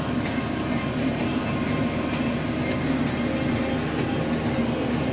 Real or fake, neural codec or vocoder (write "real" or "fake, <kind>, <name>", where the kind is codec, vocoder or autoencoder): real